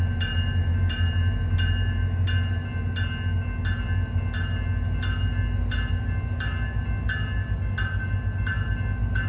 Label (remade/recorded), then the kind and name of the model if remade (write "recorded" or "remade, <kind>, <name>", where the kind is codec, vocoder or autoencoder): recorded